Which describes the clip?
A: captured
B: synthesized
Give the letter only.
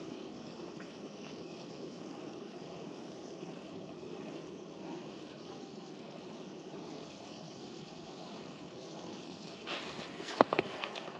B